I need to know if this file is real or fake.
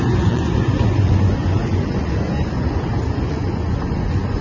fake